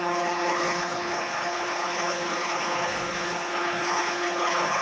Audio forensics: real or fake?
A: fake